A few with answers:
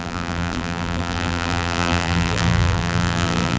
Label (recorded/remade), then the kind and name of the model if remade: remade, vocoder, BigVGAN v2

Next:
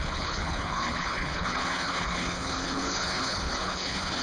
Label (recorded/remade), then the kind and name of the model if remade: remade, codec, HILCodec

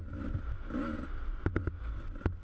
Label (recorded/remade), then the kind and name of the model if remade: recorded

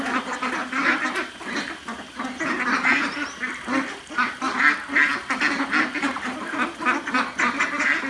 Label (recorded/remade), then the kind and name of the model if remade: recorded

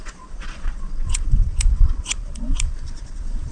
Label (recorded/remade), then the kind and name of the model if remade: remade, vocoder, Vocos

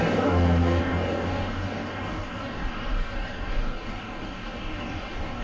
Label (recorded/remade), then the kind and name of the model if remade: remade, codec, DAC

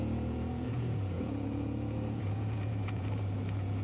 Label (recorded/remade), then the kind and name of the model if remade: remade, vocoder, Vocos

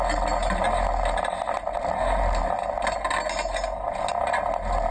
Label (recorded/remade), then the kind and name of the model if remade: recorded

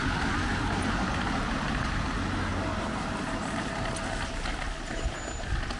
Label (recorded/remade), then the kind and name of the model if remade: recorded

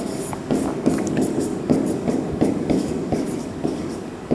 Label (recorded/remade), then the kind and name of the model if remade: remade, codec, DAC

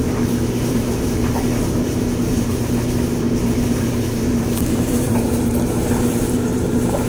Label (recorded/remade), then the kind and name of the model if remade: remade, vocoder, BigVGAN v2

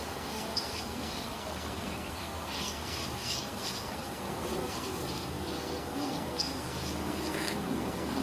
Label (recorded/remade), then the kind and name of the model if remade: remade, codec, SNAC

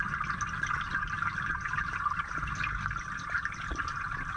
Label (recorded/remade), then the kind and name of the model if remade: recorded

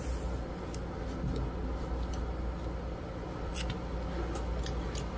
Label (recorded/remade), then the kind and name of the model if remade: recorded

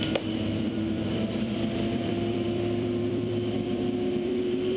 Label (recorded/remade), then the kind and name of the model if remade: remade, vocoder, BigVGAN v2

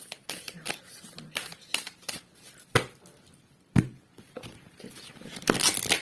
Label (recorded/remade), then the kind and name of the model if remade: recorded